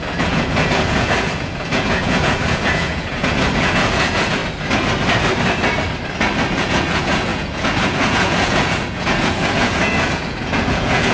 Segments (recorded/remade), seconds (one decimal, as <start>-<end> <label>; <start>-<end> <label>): 0.0-4.4 remade; 4.4-6.6 recorded; 6.6-11.1 remade